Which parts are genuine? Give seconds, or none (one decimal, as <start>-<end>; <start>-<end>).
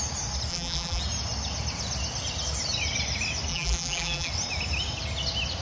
0.0-0.5; 1.0-3.5; 4.3-5.6